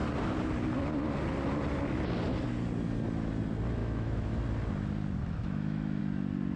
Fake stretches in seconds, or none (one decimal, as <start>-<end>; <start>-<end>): 3.8-4.4; 5.2-6.0